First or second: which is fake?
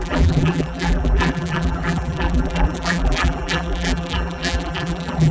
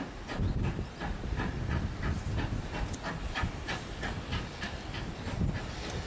first